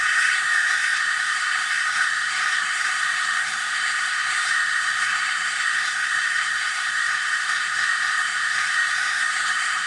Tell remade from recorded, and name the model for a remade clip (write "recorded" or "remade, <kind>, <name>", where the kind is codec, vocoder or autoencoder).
remade, codec, SNAC